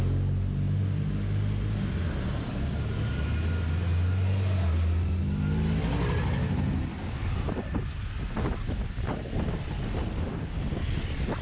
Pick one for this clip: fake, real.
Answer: real